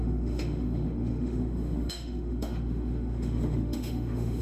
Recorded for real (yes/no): no